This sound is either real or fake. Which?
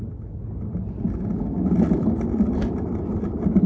real